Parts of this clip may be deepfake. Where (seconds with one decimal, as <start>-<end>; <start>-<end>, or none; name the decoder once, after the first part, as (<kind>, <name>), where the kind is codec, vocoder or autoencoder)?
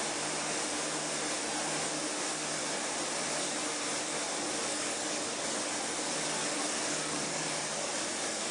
4.7-5.7 (codec, DAC); 6.4-7.9